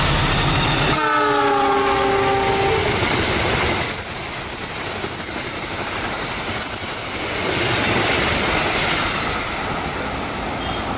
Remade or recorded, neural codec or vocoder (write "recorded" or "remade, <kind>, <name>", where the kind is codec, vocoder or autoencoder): recorded